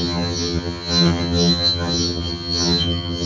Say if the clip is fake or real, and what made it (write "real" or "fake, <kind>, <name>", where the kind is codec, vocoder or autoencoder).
fake, vocoder, HiFi-GAN